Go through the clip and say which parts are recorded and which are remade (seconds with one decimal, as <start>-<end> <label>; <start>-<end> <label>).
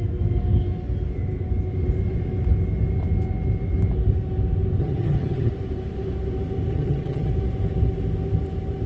0.0-4.8 recorded; 4.8-5.5 remade; 5.5-6.7 recorded; 6.7-7.3 remade; 7.3-8.9 recorded